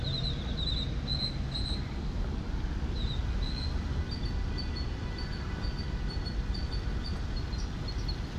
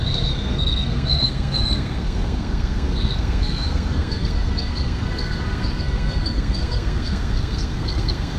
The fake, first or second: second